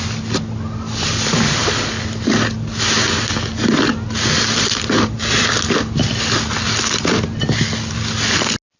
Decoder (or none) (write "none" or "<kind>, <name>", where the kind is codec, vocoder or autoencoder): none